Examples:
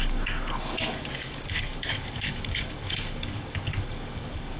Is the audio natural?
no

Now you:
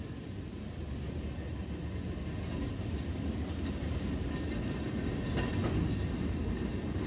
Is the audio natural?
yes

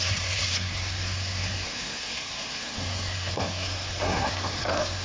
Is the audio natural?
no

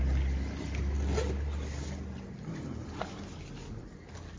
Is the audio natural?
yes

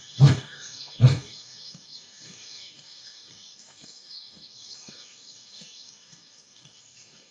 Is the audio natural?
no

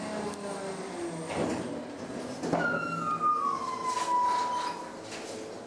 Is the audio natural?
yes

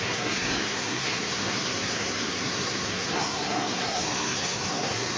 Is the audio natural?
no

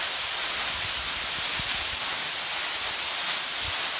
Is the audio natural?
yes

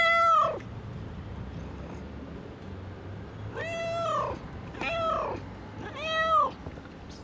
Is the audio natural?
yes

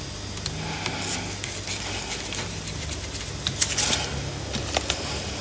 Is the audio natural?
yes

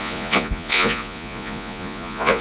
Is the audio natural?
no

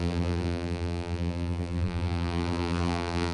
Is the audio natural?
no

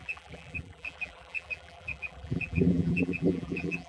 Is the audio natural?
no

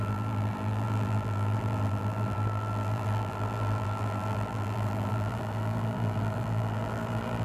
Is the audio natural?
no